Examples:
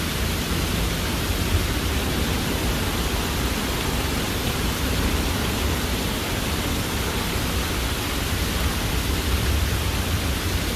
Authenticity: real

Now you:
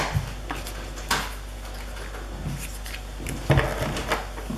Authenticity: real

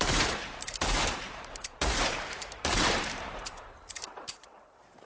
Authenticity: fake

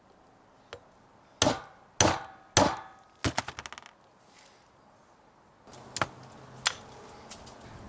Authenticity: real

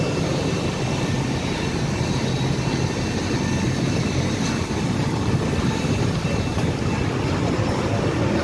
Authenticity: real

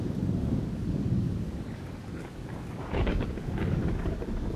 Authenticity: fake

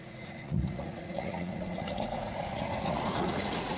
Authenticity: fake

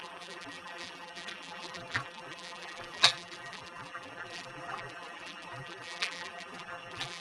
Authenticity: fake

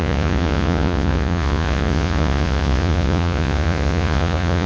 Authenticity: fake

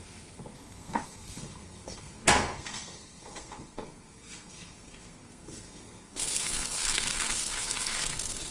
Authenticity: fake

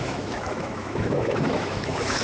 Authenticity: fake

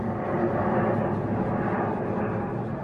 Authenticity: real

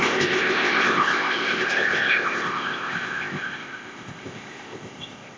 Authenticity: fake